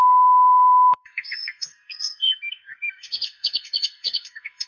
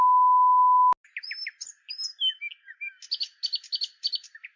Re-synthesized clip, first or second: first